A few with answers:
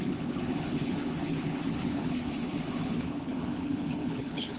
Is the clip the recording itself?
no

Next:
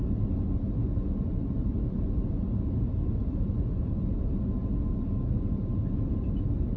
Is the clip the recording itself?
yes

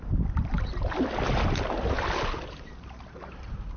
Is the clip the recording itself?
yes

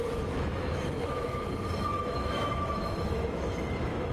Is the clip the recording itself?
no